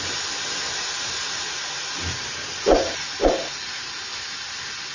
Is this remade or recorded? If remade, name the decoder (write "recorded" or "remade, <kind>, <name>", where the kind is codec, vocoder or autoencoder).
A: recorded